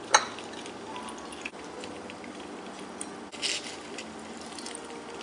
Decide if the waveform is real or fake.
real